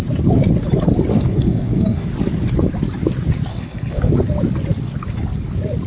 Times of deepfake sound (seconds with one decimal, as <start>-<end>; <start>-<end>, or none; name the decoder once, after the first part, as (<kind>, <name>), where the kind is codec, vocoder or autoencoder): 1.1-2.1 (codec, SNAC); 3.5-4.1